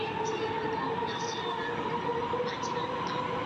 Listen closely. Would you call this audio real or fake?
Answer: real